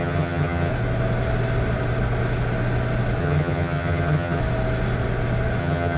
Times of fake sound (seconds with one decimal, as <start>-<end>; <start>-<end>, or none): 0.0-0.7; 3.2-4.4; 5.6-6.0